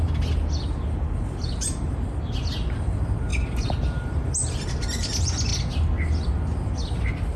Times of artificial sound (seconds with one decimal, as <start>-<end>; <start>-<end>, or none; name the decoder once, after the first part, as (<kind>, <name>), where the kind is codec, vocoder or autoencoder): none